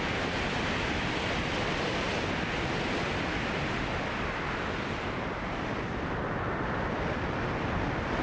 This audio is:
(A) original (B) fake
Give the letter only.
A